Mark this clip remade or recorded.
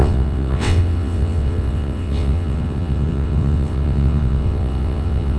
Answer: remade